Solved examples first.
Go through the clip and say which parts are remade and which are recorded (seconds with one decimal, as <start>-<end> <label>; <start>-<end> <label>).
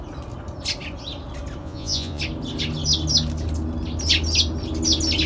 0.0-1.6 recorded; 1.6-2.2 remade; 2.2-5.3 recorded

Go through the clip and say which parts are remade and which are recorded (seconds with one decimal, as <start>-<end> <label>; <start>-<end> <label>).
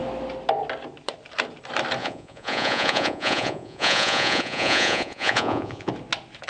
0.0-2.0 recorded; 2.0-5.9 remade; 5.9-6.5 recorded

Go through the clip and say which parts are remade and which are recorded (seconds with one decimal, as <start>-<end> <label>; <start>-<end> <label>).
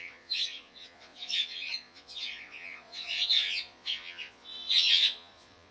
0.0-5.7 remade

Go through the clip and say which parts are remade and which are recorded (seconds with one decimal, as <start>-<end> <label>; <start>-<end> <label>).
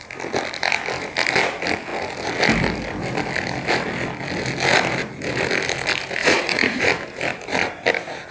0.0-6.2 recorded; 6.2-6.8 remade; 6.8-8.3 recorded